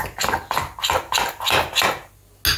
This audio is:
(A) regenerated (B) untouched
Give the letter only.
B